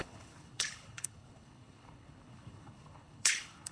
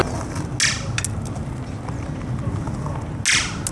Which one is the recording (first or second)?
second